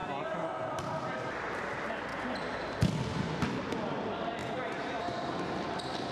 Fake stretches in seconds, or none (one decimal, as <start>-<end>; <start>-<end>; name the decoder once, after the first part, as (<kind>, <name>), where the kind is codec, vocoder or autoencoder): 4.4-5.3 (vocoder, BigVGAN v2)